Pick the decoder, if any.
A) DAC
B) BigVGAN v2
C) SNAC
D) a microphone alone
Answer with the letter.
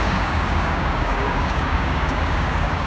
A